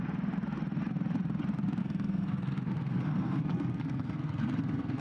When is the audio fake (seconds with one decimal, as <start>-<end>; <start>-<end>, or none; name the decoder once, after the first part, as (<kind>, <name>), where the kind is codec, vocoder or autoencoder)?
1.8-5.0 (codec, SNAC)